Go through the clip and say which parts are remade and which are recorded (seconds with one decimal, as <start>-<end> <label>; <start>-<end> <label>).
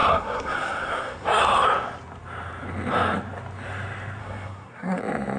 0.0-1.4 remade; 1.4-4.2 recorded; 4.2-5.0 remade; 5.0-5.4 recorded